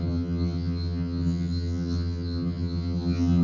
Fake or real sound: fake